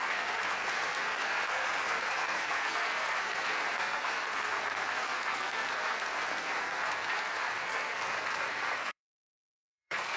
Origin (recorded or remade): remade